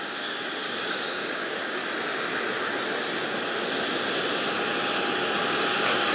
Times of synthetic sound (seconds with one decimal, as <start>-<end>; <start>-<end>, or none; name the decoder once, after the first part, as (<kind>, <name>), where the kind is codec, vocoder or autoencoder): 0.0-1.8 (codec, DAC); 5.5-6.1